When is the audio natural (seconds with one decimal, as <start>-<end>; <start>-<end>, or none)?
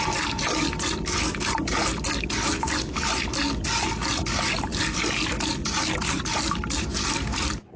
0.0-7.8